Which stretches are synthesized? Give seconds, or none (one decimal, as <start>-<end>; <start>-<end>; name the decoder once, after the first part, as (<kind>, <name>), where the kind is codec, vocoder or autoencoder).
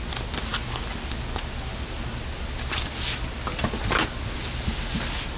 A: none